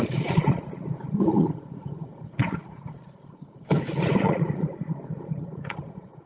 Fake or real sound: fake